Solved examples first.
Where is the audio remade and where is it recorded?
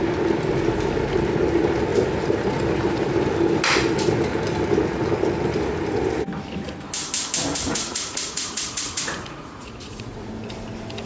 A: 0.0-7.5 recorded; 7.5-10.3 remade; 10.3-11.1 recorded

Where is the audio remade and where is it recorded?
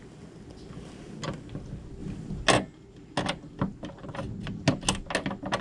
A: 0.0-5.6 recorded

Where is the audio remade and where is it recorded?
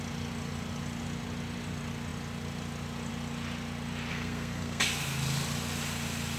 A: 0.0-4.1 recorded; 4.1-4.8 remade; 4.8-6.4 recorded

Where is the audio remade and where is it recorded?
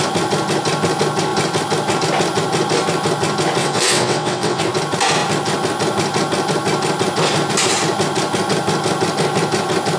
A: 0.0-3.6 recorded; 3.6-4.6 remade; 4.6-10.0 recorded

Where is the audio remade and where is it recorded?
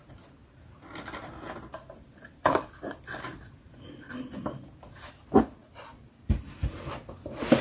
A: 0.0-7.6 recorded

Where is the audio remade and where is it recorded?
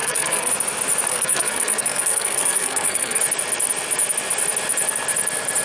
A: 0.0-0.5 remade; 0.5-1.1 recorded; 1.1-3.2 remade; 3.2-5.6 recorded